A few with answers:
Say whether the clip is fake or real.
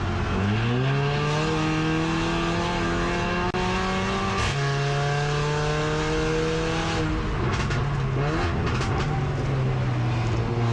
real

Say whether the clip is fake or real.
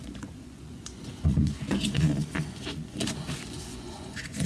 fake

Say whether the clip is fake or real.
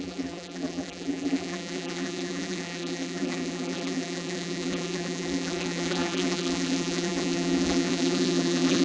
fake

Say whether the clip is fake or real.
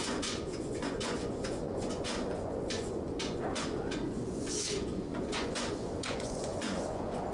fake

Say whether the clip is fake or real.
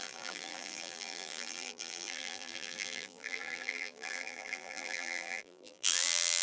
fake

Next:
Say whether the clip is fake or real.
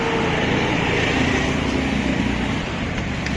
real